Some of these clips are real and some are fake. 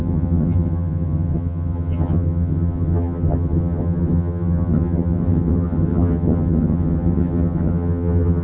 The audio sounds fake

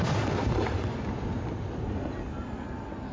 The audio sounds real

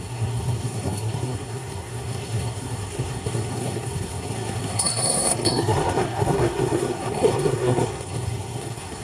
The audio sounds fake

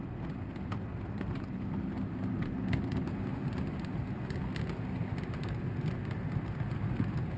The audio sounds real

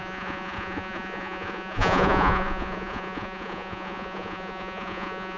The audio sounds fake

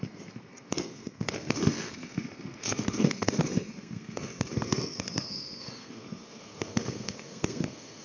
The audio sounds fake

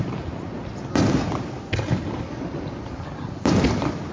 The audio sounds real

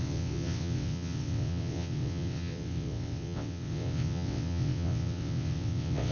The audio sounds fake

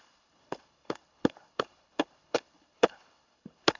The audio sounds fake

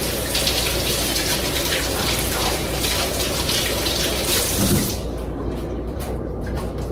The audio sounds fake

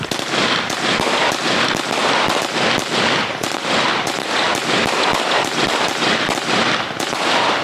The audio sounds fake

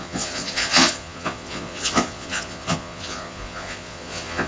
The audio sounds fake